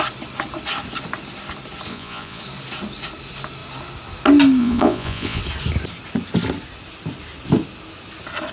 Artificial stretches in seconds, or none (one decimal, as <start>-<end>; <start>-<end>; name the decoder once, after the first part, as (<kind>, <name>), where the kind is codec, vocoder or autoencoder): 1.9-2.4 (vocoder, Vocos); 4.6-5.4